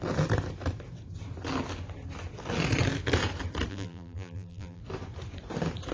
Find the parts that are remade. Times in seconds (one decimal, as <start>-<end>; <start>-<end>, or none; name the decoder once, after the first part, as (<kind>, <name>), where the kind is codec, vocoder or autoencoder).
3.7-4.8 (vocoder, BigVGAN v2)